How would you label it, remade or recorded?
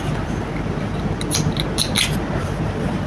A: recorded